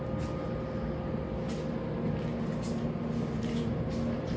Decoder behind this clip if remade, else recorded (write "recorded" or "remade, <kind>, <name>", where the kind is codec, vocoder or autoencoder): recorded